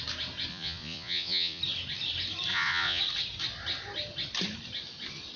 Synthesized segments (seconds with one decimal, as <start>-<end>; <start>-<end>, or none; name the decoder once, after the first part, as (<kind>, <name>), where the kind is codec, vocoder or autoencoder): 0.5-1.6 (vocoder, Vocos); 2.5-3.0